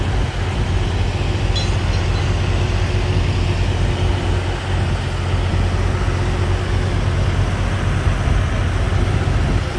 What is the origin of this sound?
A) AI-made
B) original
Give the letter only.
B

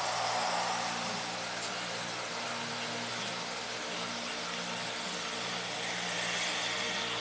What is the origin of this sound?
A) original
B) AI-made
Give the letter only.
A